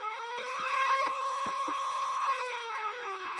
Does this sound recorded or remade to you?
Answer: remade